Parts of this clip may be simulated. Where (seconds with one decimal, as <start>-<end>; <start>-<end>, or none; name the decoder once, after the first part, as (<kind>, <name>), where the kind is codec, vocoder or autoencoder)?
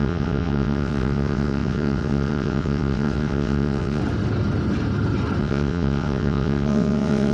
0.0-4.0 (vocoder, WaveNeXt); 5.4-7.3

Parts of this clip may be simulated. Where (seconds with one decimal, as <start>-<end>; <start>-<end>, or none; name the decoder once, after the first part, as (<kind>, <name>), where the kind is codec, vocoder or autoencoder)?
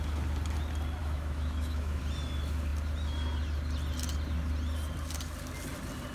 1.0-2.0 (autoencoder, DAC-VAE)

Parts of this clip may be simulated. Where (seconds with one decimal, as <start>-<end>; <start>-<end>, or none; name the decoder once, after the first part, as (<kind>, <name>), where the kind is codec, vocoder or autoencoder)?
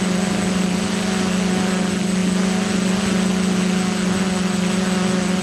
none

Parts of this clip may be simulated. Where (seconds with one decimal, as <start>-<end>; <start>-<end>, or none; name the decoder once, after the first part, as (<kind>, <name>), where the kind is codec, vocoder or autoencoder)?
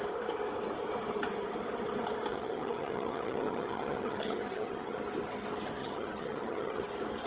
2.3-5.0 (vocoder, HiFi-GAN); 5.8-6.8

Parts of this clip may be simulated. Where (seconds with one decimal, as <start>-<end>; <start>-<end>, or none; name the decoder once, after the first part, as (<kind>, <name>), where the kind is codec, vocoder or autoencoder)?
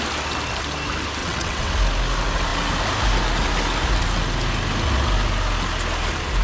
1.2-1.7 (vocoder, WaveNeXt)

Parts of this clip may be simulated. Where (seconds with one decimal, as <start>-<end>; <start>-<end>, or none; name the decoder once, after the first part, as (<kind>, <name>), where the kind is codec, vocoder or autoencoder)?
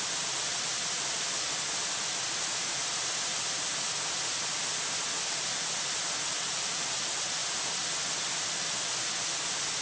none